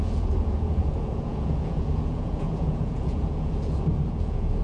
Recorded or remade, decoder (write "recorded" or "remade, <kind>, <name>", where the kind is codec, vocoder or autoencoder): remade, vocoder, Vocos